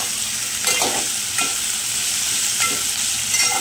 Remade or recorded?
recorded